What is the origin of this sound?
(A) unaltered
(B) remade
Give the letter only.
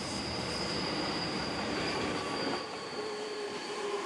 B